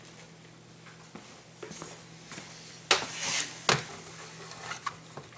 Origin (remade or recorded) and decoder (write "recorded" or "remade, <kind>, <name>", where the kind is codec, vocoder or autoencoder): recorded